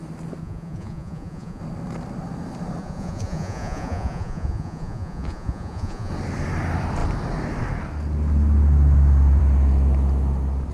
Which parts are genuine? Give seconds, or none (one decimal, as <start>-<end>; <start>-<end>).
0.0-0.4; 1.6-2.8; 6.1-10.7